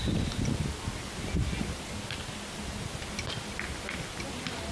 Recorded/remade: recorded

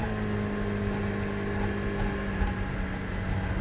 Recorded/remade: recorded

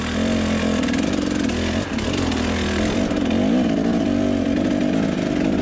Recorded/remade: recorded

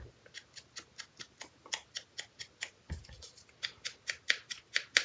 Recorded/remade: recorded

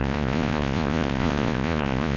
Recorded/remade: remade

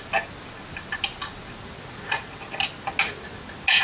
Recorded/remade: recorded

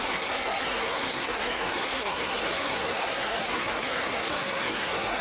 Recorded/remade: remade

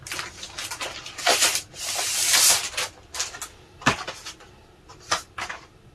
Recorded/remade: recorded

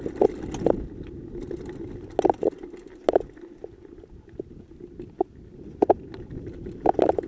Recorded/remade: recorded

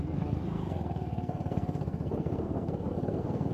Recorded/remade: remade